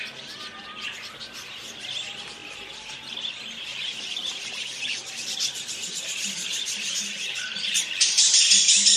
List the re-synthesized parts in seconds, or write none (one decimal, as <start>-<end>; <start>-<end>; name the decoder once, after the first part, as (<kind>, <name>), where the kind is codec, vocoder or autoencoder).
3.7-8.3 (vocoder, BigVGAN v2)